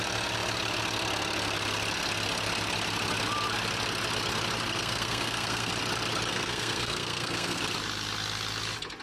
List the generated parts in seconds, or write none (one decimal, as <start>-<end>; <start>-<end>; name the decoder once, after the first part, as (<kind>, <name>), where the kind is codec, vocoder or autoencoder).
4.8-5.7 (codec, SNAC); 6.3-7.6